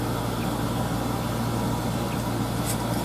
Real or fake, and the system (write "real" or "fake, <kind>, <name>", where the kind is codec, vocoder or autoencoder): real